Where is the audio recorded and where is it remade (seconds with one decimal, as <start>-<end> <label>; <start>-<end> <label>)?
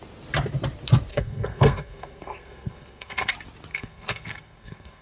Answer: 0.0-1.1 recorded; 1.1-3.3 remade; 3.3-3.7 recorded; 3.7-5.0 remade